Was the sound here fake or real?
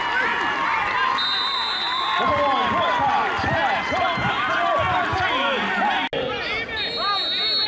real